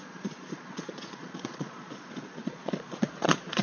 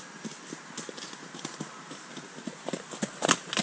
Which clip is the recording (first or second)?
second